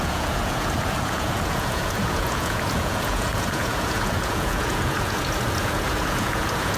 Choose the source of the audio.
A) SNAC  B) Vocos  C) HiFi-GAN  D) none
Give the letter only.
B